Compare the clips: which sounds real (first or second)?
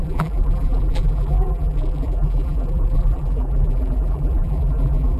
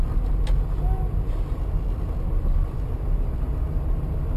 second